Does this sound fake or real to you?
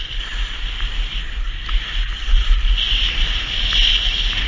real